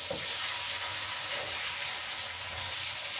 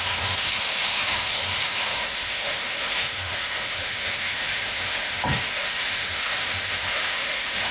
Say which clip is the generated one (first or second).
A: second